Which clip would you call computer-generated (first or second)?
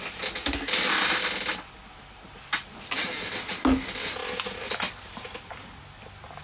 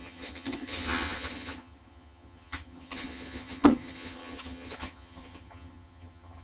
second